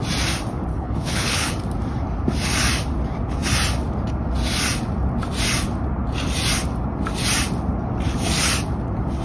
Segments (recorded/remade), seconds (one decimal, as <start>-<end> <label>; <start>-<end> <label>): 0.0-0.7 recorded; 0.7-1.5 remade; 1.5-9.2 recorded